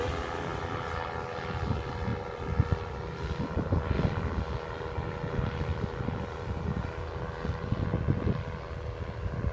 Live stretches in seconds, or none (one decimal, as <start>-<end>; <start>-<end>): 0.0-9.5